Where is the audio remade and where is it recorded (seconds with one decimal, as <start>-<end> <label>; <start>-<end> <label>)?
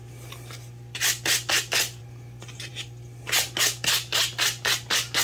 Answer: 0.0-5.2 recorded